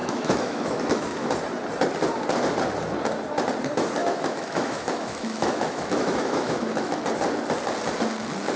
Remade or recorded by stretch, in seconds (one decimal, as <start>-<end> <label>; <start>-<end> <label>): 0.0-1.3 remade; 1.3-4.0 recorded; 4.0-7.0 remade; 7.0-8.6 recorded